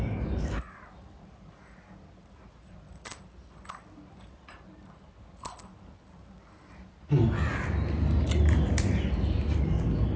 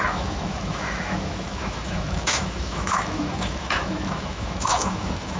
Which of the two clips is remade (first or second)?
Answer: second